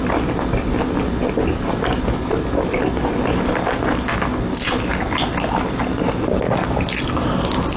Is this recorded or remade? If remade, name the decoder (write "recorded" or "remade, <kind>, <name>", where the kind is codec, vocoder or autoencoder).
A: recorded